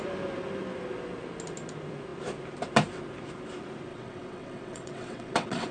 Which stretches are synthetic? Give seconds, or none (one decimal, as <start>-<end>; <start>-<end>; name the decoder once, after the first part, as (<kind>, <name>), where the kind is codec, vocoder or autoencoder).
3.9-5.7 (vocoder, WaveNeXt)